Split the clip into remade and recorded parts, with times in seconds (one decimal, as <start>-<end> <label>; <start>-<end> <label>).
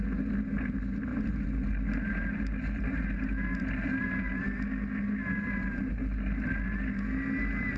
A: 0.0-7.8 recorded